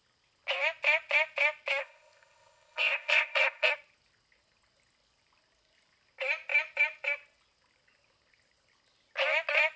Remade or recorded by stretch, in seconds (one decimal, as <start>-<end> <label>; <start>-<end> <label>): 0.0-1.8 recorded; 1.8-3.7 remade; 3.7-9.8 recorded